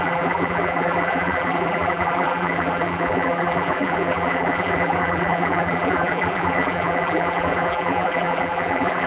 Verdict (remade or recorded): remade